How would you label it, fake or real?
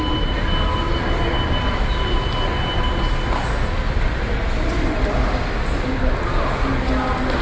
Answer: real